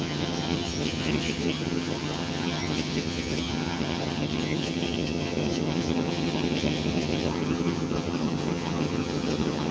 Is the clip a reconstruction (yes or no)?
yes